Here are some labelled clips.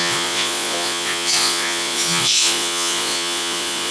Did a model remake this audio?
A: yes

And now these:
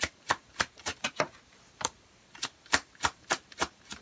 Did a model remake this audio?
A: yes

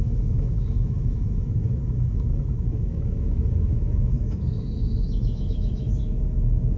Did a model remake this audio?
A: yes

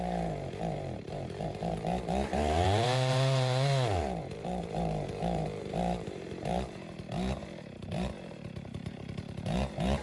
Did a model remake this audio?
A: yes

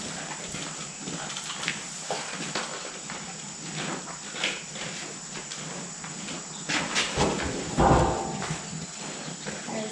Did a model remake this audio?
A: yes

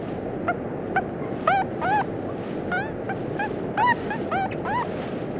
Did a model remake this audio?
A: no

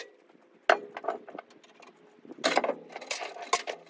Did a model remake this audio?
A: no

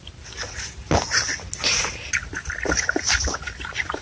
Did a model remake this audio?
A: no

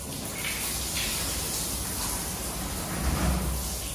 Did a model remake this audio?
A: no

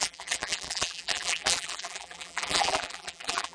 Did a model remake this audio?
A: yes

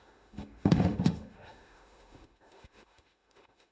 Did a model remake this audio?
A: yes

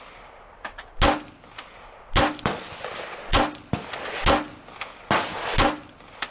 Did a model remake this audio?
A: no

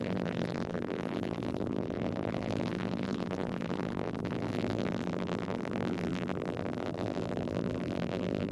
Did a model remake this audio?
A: yes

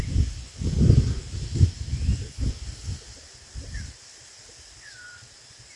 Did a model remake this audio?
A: no